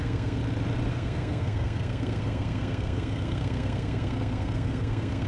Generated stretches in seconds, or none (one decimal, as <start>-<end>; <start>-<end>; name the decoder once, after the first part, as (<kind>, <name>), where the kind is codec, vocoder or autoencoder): 0.0-0.4 (codec, SNAC); 0.9-5.3